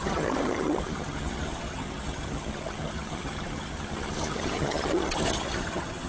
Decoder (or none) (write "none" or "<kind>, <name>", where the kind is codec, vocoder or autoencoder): vocoder, HiFi-GAN